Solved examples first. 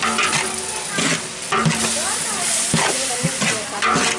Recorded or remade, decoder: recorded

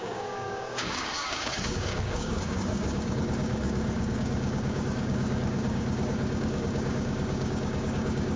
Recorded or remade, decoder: remade, codec, DAC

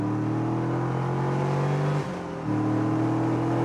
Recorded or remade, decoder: recorded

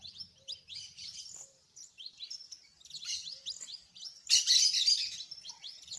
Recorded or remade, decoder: recorded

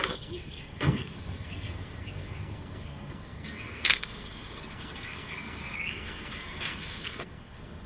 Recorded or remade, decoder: remade, codec, SNAC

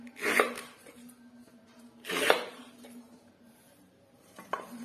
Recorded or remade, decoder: remade, vocoder, BigVGAN v2